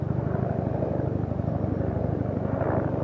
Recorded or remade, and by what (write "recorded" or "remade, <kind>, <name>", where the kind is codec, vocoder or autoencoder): recorded